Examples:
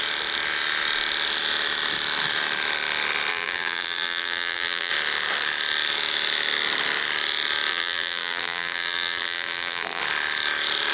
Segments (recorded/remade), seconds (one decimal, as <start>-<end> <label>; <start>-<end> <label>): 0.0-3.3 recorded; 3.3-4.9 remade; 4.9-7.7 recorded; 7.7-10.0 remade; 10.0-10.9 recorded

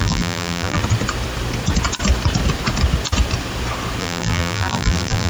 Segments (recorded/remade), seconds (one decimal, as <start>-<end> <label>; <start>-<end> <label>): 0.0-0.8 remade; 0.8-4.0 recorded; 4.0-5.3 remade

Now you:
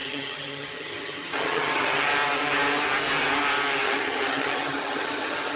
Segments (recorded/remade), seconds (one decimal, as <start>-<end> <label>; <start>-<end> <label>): 0.0-2.1 remade; 2.1-3.8 recorded; 3.8-5.6 remade

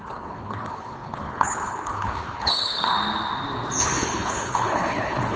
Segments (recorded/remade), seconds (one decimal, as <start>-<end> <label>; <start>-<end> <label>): 0.0-2.9 remade; 2.9-3.8 recorded; 3.8-5.4 remade

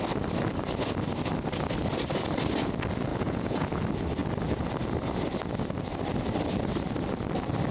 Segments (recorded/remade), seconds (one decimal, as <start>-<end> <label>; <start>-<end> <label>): 0.0-3.1 recorded; 3.1-3.8 remade; 3.8-7.7 recorded

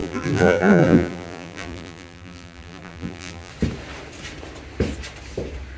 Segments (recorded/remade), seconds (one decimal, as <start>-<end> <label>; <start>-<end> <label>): 0.0-3.5 remade; 3.5-5.8 recorded

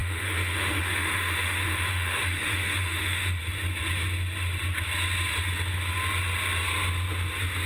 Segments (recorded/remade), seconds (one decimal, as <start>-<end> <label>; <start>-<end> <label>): 0.0-3.4 remade; 3.4-7.7 recorded

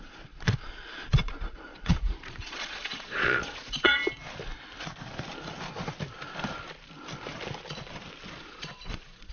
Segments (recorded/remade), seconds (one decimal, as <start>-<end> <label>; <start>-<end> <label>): 0.0-4.0 remade; 4.0-8.4 recorded; 8.4-9.3 remade